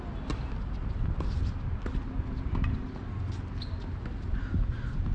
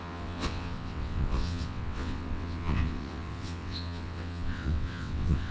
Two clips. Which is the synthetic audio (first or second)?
second